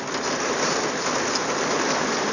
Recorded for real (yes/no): yes